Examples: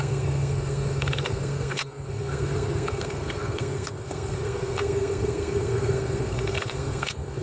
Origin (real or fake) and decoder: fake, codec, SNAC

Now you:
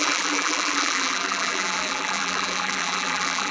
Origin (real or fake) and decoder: fake, vocoder, BigVGAN v2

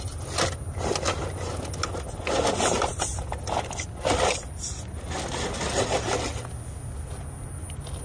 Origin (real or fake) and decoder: real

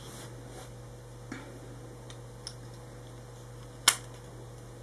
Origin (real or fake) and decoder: real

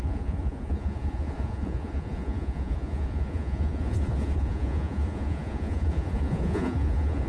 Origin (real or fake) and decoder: fake, vocoder, Vocos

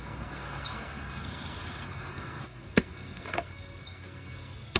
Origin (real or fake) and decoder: fake, codec, SNAC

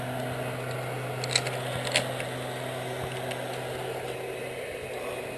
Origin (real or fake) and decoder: real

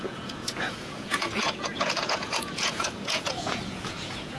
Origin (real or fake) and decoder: fake, vocoder, Vocos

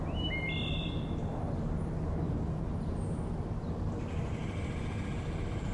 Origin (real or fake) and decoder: real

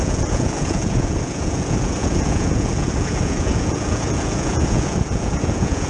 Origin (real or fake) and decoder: fake, vocoder, Vocos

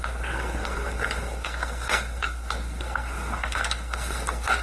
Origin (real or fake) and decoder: fake, codec, SNAC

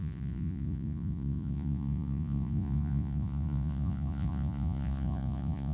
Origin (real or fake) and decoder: fake, vocoder, Vocos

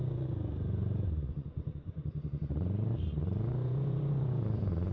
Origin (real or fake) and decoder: fake, vocoder, Vocos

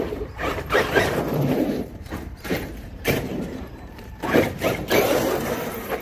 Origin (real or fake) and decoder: fake, vocoder, BigVGAN v2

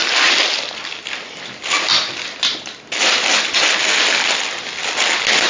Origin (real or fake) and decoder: real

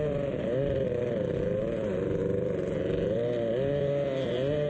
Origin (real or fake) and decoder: real